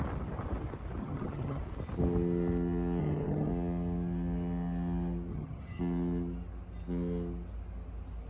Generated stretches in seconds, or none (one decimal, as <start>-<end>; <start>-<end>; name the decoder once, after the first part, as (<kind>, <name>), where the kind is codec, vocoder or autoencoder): 1.0-1.6 (vocoder, HiFi-GAN); 3.0-3.5; 5.3-5.8